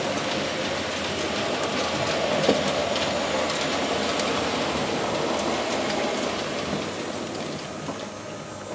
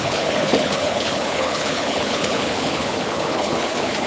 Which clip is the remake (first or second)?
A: second